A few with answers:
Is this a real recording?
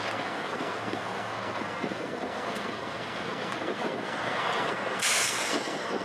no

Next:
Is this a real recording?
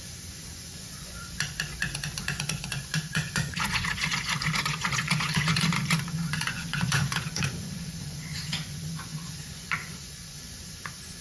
no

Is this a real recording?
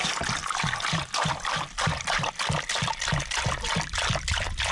no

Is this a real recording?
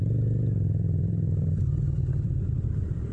no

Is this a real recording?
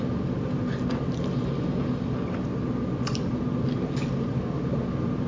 yes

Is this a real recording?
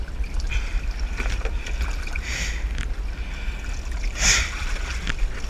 yes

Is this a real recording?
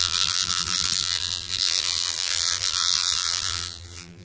no